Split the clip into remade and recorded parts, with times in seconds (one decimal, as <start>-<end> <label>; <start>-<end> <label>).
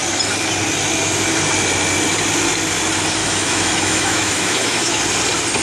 0.0-3.2 recorded; 3.2-5.0 remade; 5.0-5.6 recorded